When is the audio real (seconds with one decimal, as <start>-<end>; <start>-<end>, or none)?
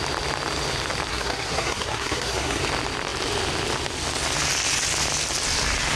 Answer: 0.0-1.1; 2.6-6.0